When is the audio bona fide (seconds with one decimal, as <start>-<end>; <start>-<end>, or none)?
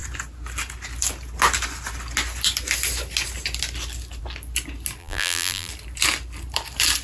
0.0-5.0; 5.7-7.0